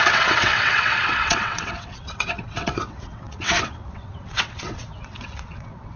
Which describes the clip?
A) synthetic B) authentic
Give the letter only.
A